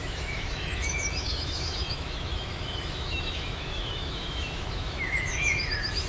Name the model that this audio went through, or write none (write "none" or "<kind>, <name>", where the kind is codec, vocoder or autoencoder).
autoencoder, DAC-VAE